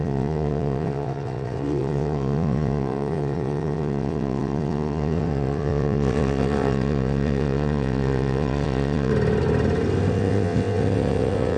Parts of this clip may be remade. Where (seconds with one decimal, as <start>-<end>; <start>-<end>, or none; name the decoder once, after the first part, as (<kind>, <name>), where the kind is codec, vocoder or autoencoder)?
0.0-9.1 (vocoder, WaveNeXt); 10.1-11.6